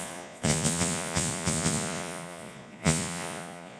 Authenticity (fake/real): fake